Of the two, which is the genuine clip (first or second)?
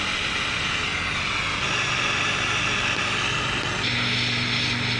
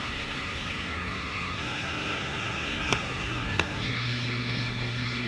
first